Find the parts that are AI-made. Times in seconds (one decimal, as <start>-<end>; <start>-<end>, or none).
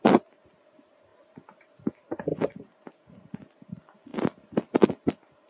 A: 0.0-1.1; 1.9-5.5